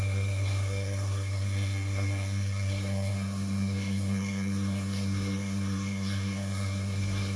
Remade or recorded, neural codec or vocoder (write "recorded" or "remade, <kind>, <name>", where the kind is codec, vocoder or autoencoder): remade, codec, SNAC